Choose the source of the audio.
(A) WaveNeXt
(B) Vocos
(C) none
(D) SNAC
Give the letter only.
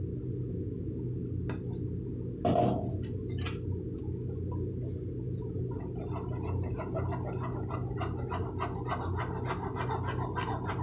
C